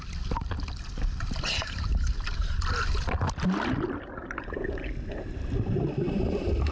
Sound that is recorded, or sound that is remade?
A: recorded